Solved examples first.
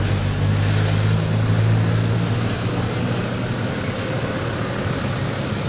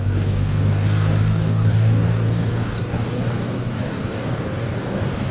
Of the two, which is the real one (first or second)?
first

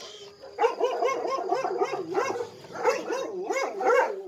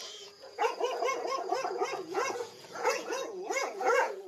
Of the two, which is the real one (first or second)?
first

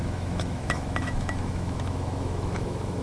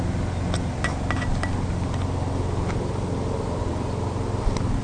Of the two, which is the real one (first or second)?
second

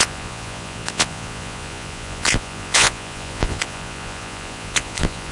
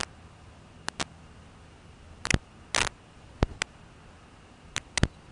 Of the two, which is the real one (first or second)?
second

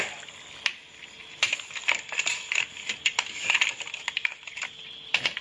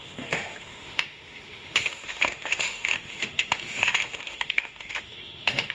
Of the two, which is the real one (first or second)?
first